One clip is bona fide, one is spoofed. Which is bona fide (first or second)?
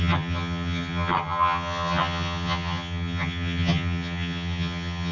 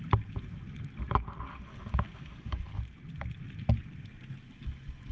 second